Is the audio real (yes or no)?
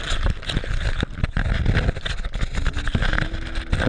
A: yes